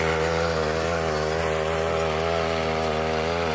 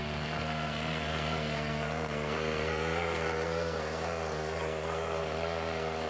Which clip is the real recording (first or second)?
first